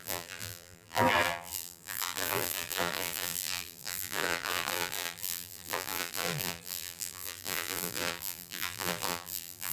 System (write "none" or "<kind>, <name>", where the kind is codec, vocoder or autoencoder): vocoder, BigVGAN v2